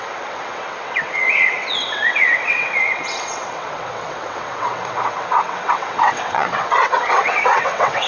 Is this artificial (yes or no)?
yes